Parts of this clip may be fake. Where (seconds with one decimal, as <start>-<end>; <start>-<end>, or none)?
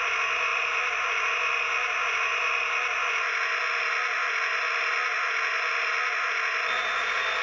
0.5-1.3